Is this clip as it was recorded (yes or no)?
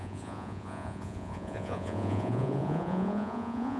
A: no